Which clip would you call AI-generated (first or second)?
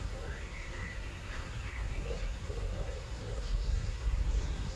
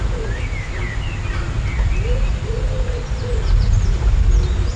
first